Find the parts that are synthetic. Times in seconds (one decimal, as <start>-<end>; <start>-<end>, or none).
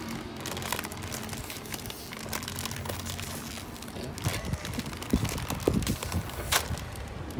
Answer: none